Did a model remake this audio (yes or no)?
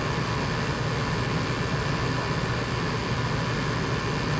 no